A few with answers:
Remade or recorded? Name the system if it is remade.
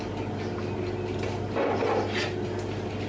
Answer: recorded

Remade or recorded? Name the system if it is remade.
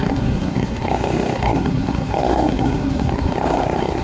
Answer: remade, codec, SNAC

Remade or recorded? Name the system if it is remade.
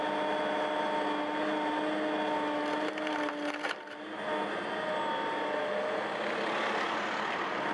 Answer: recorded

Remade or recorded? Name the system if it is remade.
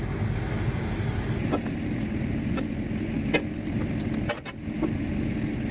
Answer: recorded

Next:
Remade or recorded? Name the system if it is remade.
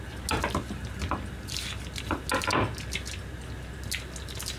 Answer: recorded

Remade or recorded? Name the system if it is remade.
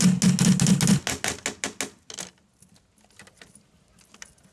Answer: recorded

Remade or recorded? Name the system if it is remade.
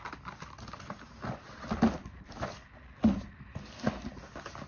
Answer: recorded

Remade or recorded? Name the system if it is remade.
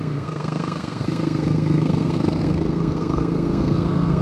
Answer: remade, codec, SNAC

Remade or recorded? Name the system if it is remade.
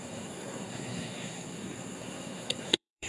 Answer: remade, codec, SNAC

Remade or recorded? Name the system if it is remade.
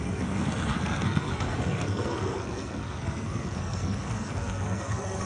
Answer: remade, codec, SNAC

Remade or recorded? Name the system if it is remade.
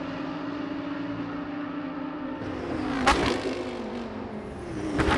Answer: recorded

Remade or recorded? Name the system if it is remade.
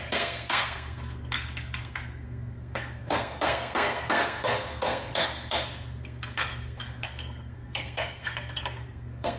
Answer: remade, codec, SNAC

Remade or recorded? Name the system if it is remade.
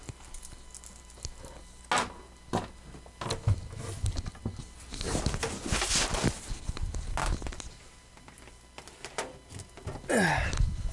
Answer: recorded